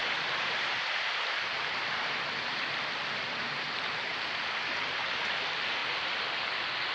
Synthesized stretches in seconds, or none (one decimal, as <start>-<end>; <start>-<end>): 0.0-3.6; 5.8-6.4